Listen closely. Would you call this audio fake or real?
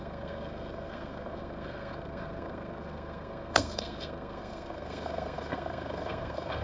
fake